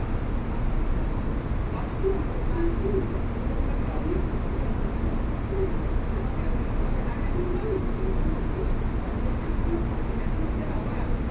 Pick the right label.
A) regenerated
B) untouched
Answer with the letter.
B